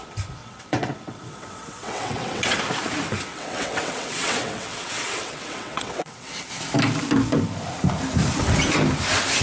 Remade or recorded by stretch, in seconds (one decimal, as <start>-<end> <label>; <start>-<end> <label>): 0.0-0.4 recorded; 0.4-2.6 remade; 2.6-3.3 recorded; 3.3-6.5 remade; 6.5-9.4 recorded